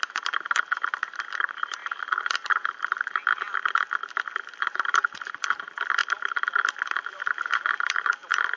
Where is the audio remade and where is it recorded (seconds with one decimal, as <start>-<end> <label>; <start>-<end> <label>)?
0.0-3.3 recorded; 3.3-5.3 remade; 5.3-8.6 recorded